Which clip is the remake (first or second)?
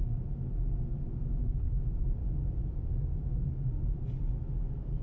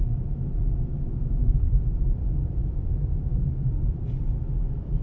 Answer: second